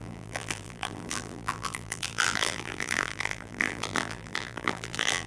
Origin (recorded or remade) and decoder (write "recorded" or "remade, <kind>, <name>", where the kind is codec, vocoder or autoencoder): remade, vocoder, BigVGAN v2